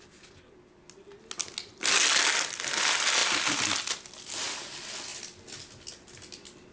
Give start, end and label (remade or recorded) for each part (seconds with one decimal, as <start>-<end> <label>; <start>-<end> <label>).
0.0-6.7 recorded